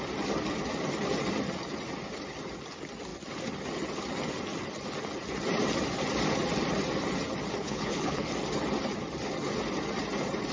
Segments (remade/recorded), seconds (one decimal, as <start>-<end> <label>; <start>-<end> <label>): 0.0-7.6 recorded; 7.6-8.3 remade; 8.3-10.5 recorded